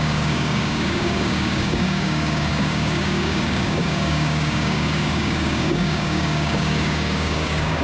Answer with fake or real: fake